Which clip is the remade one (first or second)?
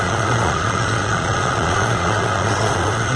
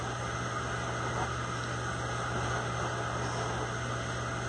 first